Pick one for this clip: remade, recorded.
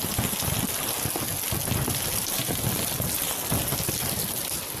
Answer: recorded